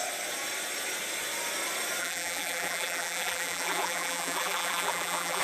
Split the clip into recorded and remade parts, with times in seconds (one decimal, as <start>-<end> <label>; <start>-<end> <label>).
0.0-2.0 recorded; 2.0-5.4 remade